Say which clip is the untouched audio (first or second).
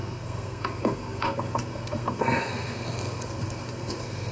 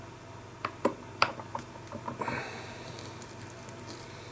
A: second